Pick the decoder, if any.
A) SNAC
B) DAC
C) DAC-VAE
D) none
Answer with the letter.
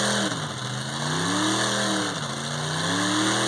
D